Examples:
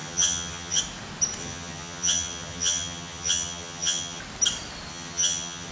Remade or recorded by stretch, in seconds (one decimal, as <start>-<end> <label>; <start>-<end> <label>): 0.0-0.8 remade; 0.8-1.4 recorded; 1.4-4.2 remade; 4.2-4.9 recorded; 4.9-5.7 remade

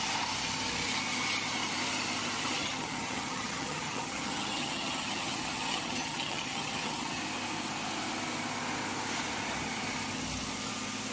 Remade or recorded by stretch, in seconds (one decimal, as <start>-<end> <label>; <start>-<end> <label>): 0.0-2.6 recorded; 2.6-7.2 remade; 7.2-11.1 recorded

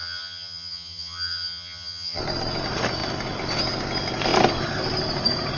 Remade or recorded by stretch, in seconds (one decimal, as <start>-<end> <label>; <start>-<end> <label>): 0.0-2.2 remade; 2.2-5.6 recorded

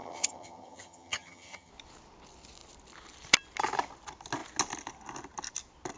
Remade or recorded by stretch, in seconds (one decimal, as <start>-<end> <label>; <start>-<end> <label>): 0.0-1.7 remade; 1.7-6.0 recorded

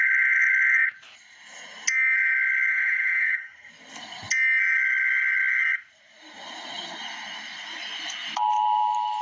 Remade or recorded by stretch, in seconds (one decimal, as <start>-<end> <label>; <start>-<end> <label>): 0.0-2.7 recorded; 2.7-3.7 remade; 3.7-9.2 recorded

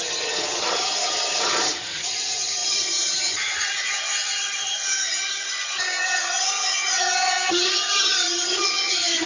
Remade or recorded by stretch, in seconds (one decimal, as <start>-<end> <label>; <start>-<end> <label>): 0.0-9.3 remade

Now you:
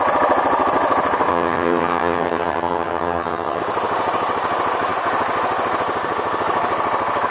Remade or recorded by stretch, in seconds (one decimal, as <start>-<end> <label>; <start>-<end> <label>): 0.0-1.3 recorded; 1.3-3.6 remade; 3.6-7.3 recorded